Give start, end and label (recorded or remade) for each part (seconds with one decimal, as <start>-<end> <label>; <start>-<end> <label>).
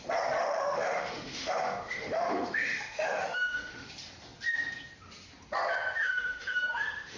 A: 0.0-0.4 recorded; 0.4-3.9 remade; 3.9-6.0 recorded; 6.0-7.2 remade